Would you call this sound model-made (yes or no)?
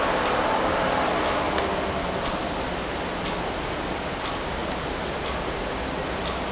no